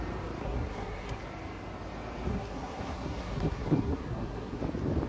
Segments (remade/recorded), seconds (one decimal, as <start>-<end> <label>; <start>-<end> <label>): 0.0-0.4 recorded; 0.4-1.2 remade; 1.2-2.3 recorded; 2.3-4.6 remade; 4.6-5.1 recorded